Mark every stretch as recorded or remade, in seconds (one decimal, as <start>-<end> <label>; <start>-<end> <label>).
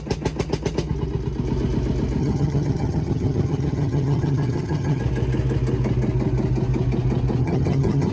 0.0-2.2 recorded; 2.2-5.0 remade; 5.0-7.4 recorded; 7.4-8.1 remade